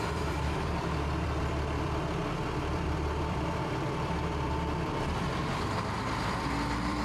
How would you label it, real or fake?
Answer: fake